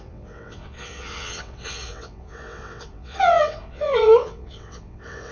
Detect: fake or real fake